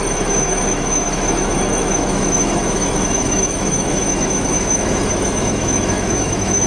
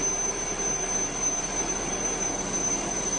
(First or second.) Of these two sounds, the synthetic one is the first